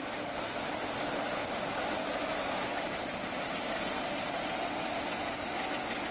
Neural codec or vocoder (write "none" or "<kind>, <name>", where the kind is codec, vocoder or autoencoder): none